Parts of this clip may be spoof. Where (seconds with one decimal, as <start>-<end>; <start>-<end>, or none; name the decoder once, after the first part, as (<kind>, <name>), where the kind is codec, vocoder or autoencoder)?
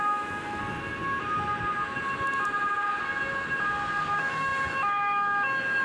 0.0-0.6 (autoencoder, DAC-VAE); 4.1-5.8